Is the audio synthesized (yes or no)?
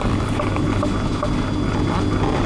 no